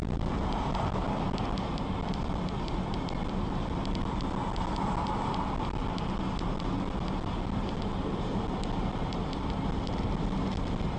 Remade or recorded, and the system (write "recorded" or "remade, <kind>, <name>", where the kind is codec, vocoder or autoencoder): recorded